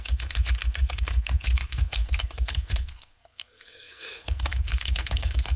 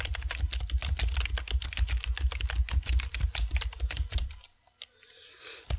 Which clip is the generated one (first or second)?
first